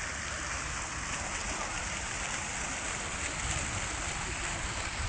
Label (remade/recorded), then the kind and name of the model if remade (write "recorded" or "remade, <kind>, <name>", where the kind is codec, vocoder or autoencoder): recorded